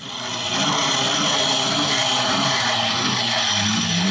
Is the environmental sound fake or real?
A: real